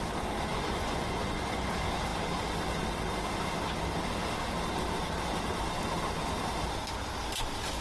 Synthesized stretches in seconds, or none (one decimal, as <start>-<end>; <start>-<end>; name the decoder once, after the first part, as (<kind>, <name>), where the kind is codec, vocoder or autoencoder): 0.5-1.7 (vocoder, Vocos)